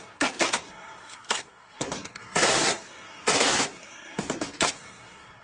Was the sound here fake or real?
fake